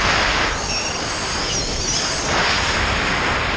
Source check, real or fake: real